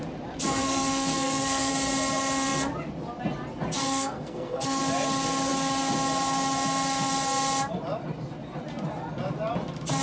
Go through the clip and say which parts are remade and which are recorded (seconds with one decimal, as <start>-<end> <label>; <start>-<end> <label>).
0.0-0.6 recorded; 0.6-1.7 remade; 1.7-3.8 recorded; 3.8-4.8 remade; 4.8-10.0 recorded